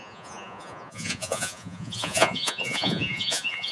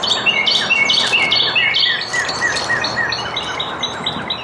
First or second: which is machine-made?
first